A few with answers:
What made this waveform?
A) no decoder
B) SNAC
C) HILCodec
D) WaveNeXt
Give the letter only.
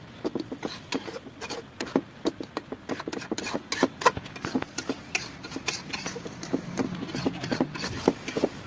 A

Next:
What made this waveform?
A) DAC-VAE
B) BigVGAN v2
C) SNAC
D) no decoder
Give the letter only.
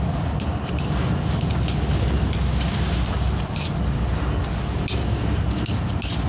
D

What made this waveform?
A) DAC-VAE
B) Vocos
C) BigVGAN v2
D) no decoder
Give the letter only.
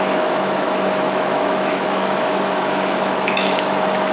A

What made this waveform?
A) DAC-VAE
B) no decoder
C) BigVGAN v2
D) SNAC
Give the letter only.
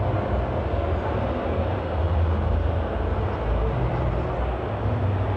B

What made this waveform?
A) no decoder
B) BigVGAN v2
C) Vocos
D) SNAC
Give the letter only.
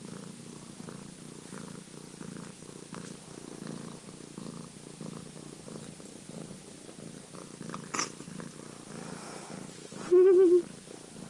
A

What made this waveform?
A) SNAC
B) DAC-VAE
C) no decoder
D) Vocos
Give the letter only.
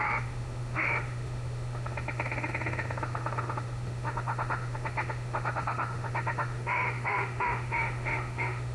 B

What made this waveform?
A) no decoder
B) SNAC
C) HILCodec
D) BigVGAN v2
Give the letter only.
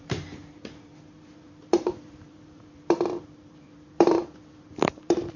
D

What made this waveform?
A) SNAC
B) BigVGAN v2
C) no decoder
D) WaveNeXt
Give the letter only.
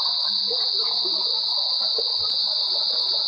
C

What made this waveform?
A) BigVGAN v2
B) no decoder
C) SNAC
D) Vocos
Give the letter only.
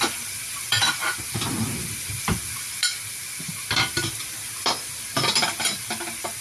A